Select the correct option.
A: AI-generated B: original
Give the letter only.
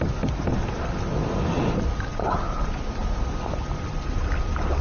B